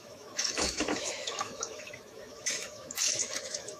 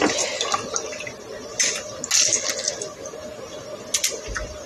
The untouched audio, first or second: second